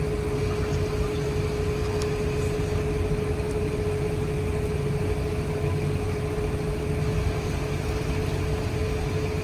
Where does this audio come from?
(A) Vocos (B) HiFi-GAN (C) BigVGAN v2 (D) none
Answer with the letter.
D